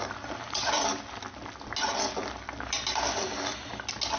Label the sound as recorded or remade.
recorded